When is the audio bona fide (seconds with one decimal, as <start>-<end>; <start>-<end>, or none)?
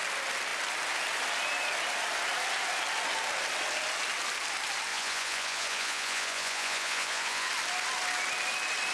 0.0-4.9; 7.5-8.9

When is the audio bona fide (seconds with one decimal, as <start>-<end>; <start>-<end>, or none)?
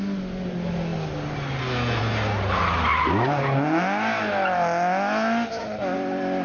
0.0-6.4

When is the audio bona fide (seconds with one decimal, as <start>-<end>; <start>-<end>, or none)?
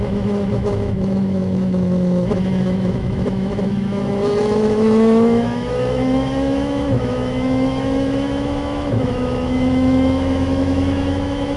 none